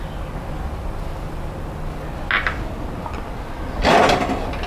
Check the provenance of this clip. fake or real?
real